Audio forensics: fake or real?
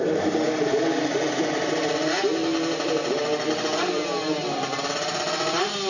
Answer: real